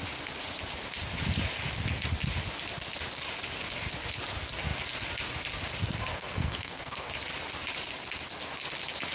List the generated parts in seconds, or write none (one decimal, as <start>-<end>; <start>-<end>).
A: 6.1-7.1